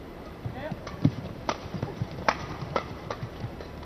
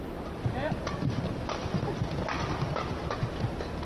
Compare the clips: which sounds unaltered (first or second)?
second